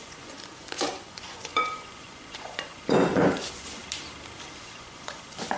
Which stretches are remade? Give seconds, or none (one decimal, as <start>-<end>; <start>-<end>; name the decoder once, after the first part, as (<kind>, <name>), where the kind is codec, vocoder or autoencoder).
0.0-3.8 (vocoder, Vocos); 4.6-5.6